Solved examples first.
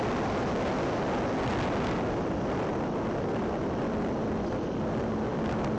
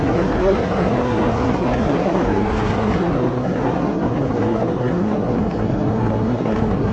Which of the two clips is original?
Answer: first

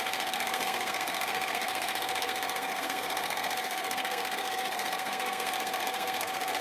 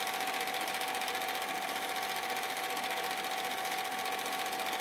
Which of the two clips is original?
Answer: second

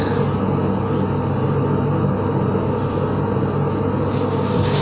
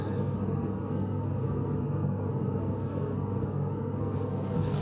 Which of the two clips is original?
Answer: first